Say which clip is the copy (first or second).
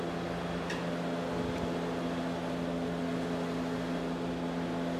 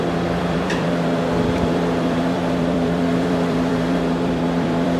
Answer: second